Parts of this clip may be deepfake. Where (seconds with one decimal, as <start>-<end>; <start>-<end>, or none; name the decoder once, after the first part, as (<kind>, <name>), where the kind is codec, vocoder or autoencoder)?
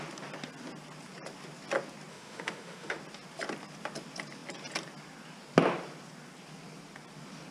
2.1-3.0 (autoencoder, DAC-VAE)